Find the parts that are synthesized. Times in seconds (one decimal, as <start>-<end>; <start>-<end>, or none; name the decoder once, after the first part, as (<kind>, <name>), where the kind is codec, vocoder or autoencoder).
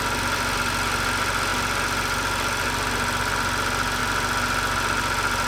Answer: none